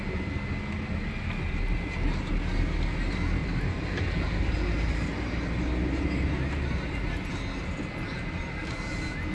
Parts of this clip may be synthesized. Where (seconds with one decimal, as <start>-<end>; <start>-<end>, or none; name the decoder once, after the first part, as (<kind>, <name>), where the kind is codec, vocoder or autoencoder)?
3.4-6.8 (vocoder, BigVGAN v2)